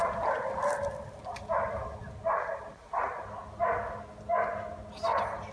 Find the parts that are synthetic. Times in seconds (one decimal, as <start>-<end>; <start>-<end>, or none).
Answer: none